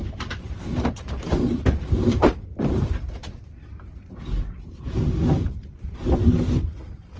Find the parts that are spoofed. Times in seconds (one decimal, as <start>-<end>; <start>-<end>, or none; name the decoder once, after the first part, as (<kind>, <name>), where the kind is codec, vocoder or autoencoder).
0.0-3.6 (vocoder, BigVGAN v2)